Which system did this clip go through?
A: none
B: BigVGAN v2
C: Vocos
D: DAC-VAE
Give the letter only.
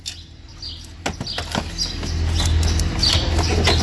A